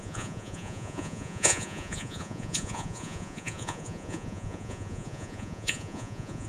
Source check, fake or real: fake